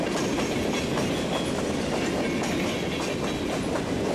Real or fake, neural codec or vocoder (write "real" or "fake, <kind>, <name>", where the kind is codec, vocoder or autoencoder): real